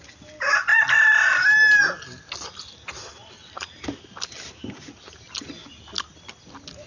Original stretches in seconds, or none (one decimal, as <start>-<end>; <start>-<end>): 0.0-6.9